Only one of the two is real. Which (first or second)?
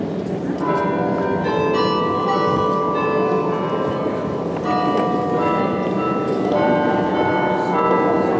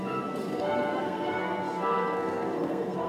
first